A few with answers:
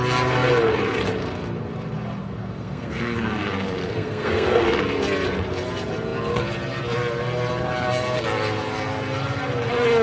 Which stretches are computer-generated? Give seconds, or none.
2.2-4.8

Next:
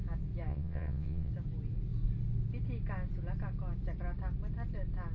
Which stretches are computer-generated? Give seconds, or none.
0.5-1.3

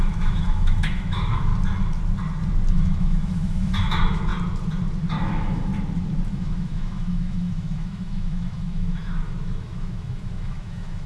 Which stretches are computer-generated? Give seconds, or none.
0.0-1.5; 2.7-4.3; 5.2-5.7; 6.3-11.1

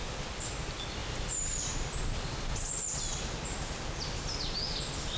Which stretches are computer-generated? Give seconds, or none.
1.0-2.7